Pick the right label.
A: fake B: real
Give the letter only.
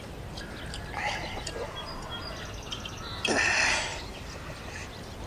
B